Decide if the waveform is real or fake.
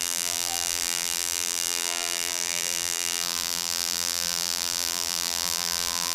fake